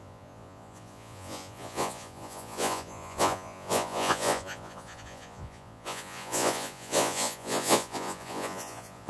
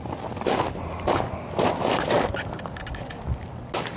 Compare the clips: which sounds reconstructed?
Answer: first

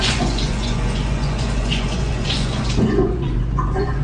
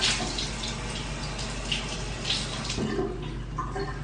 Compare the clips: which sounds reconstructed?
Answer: first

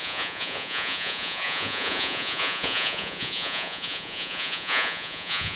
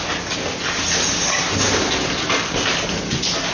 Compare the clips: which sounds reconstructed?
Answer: first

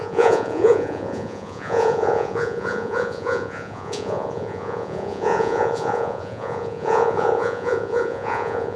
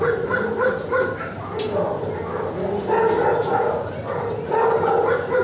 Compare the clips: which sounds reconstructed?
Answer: first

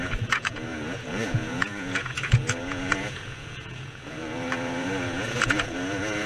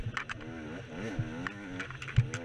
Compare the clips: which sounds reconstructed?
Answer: first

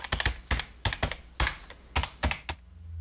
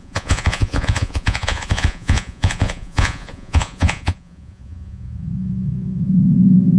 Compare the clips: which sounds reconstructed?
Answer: second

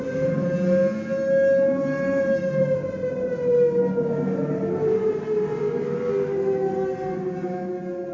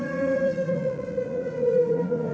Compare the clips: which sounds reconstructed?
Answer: second